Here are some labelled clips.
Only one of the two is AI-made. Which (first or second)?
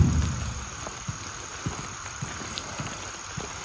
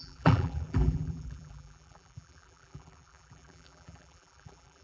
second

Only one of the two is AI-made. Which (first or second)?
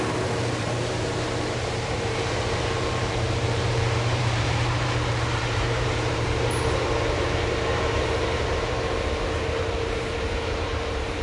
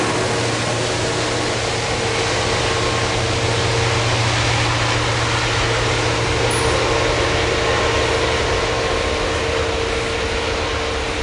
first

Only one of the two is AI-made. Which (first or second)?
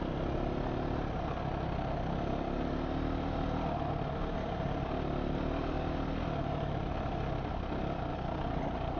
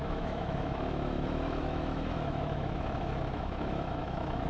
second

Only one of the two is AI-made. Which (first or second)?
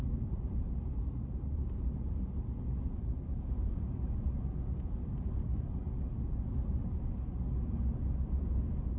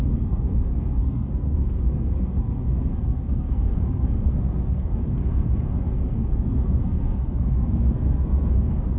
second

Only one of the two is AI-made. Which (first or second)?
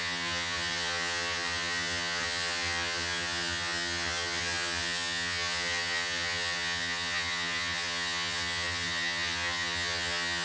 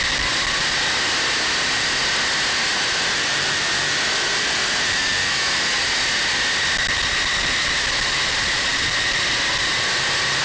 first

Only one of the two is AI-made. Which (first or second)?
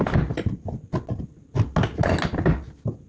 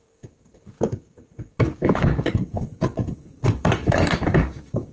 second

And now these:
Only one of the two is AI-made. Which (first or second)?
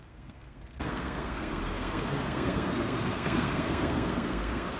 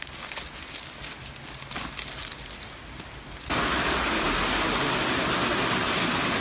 first